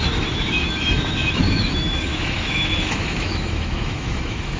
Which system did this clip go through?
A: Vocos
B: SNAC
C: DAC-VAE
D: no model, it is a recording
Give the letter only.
C